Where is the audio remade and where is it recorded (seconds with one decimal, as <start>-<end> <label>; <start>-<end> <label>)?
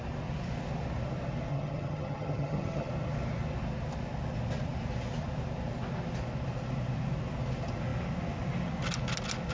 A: 0.0-1.5 recorded; 1.5-2.9 remade; 2.9-9.5 recorded